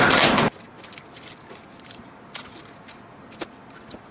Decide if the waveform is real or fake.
real